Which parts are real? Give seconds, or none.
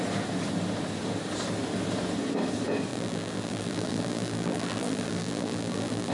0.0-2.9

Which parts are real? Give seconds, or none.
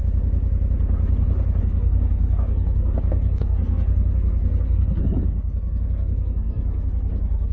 0.0-1.6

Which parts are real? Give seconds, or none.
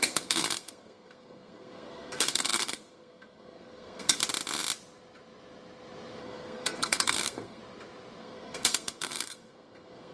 4.2-6.2; 7.6-8.2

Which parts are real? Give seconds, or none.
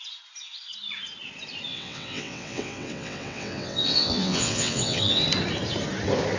0.0-1.7; 5.2-6.4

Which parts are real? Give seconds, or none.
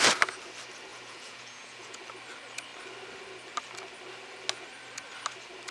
0.0-0.9; 2.0-5.7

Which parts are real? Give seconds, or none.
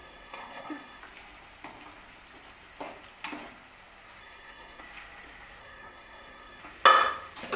1.0-4.2; 4.8-5.6; 6.6-7.6